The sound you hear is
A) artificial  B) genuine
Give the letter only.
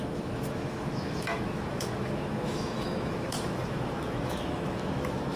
A